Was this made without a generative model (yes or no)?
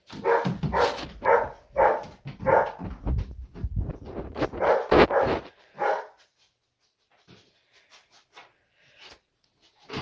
yes